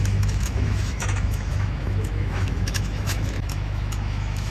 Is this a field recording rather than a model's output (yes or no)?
no